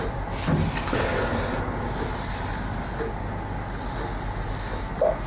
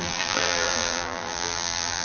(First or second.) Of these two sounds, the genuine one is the first